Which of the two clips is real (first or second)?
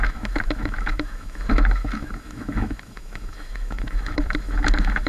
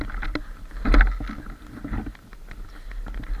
second